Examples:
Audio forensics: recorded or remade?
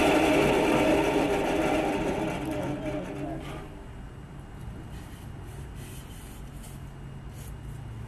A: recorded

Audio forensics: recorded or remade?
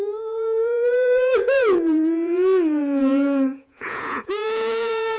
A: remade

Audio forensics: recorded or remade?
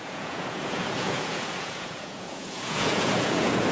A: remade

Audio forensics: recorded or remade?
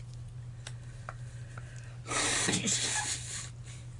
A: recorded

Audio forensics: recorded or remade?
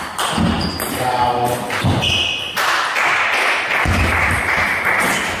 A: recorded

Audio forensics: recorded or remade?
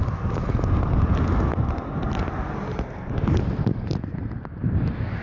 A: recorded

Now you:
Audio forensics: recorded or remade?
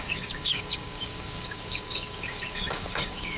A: remade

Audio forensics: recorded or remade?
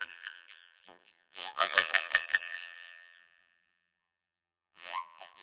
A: remade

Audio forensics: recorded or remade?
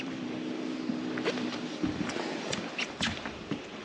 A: remade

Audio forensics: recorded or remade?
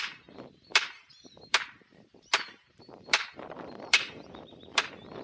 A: remade